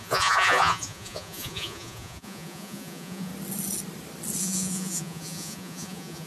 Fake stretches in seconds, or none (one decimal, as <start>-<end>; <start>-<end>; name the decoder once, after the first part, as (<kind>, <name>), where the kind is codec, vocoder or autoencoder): 0.0-3.3 (vocoder, Vocos); 4.4-6.3